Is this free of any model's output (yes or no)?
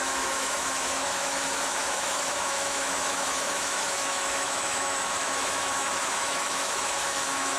no